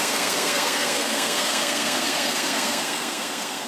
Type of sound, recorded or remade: remade